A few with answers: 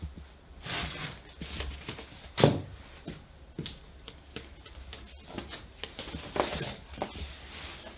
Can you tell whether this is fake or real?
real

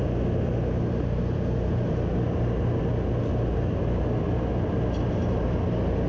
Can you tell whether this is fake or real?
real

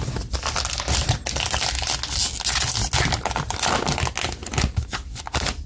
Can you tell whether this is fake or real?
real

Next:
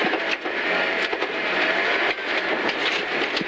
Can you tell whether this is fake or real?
real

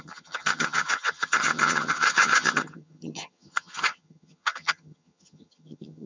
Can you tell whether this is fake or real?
fake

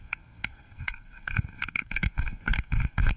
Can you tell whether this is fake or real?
fake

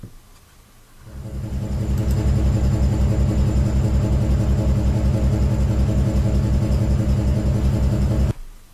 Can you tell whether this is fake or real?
real